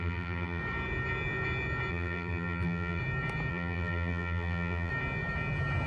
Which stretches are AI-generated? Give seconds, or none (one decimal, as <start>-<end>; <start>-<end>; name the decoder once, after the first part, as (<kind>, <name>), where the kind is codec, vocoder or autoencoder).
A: 0.0-0.6 (vocoder, BigVGAN v2); 1.9-3.0; 3.5-4.9